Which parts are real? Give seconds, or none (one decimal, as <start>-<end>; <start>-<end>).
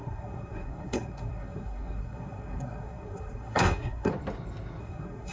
4.1-4.8